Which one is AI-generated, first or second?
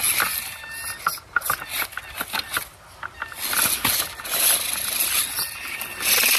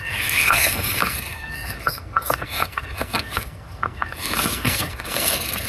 second